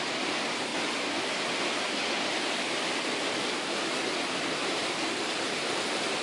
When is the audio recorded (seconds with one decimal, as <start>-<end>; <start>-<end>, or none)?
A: 0.7-4.4